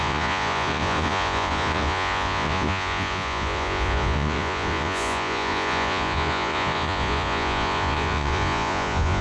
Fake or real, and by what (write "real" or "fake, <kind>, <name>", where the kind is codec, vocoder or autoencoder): fake, vocoder, Vocos